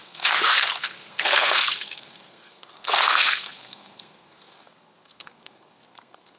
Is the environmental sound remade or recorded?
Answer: remade